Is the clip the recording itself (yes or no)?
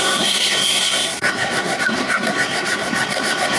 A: no